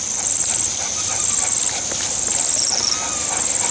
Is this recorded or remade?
recorded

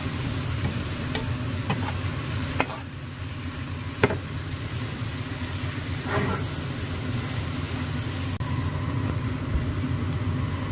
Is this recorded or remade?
recorded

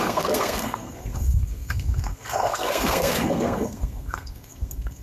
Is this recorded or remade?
remade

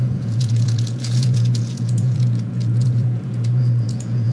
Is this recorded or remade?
remade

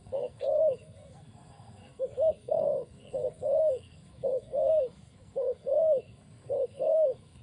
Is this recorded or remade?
remade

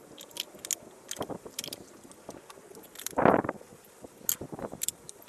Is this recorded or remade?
recorded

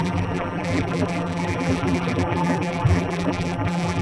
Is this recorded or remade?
remade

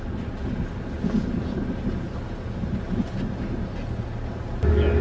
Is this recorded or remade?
recorded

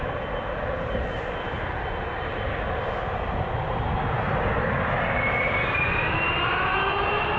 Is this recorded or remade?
recorded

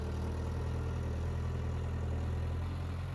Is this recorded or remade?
recorded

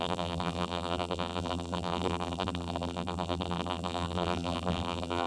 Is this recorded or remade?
remade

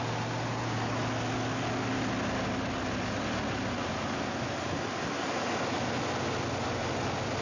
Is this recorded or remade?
recorded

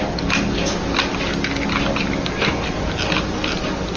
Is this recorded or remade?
recorded